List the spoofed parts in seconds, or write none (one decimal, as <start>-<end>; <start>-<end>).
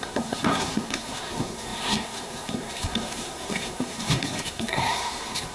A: 0.0-5.5